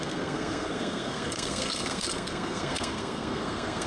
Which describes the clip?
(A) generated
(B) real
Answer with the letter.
A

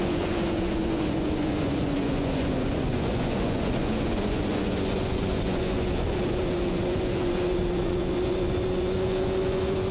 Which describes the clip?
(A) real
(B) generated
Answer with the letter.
B